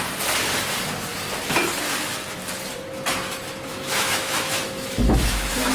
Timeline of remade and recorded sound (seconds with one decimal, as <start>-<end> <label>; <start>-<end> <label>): 0.0-3.7 recorded; 3.7-5.7 remade